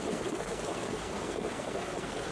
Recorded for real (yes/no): no